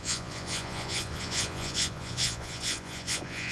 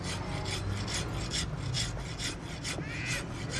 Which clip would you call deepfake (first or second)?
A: first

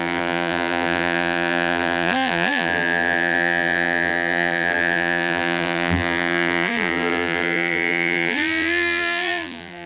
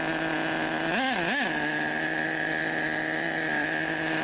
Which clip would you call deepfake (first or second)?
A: first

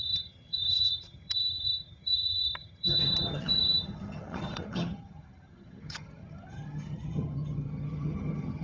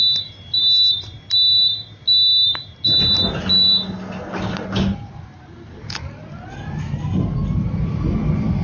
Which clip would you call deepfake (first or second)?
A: first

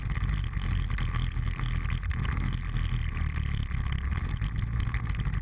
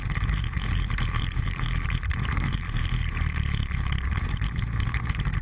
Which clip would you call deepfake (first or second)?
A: second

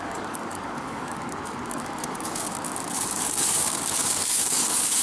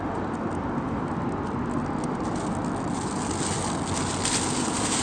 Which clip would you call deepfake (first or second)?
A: first